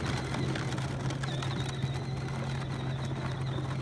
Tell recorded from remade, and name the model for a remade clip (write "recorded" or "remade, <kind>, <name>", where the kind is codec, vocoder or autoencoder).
recorded